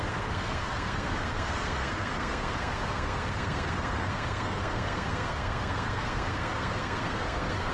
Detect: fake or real fake